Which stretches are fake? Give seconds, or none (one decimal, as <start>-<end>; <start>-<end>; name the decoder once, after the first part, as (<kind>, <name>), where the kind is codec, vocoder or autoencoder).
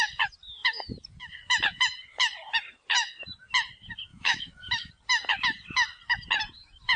4.1-4.9 (autoencoder, DAC-VAE)